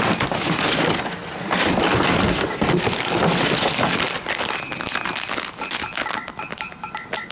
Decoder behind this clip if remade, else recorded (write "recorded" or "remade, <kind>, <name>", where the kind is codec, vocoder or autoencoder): recorded